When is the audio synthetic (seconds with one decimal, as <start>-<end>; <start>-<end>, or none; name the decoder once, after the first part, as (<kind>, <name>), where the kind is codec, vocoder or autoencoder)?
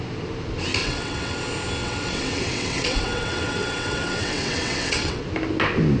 0.8-1.4 (vocoder, WaveNeXt); 1.8-5.2